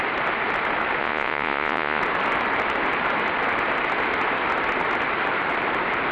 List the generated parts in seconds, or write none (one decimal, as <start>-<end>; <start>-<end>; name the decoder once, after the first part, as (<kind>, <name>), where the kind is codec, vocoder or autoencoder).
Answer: 1.0-2.0 (vocoder, Vocos)